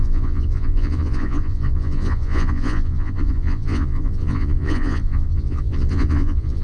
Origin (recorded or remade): remade